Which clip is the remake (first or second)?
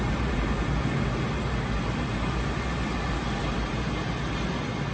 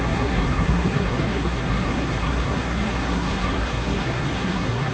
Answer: second